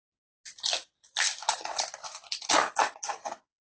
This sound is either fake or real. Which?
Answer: real